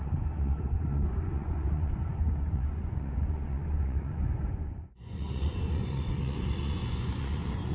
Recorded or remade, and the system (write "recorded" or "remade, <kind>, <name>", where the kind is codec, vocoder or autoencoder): remade, vocoder, Vocos